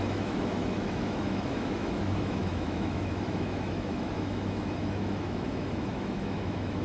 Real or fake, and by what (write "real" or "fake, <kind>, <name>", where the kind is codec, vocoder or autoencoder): fake, autoencoder, DAC-VAE